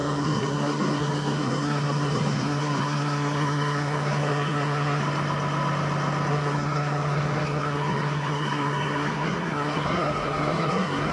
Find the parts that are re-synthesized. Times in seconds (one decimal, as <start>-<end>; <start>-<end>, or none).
0.0-5.0; 6.3-11.1